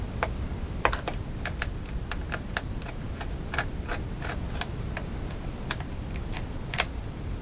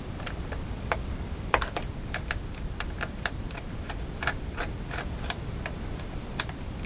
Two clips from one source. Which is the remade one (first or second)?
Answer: second